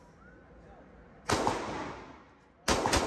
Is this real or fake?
real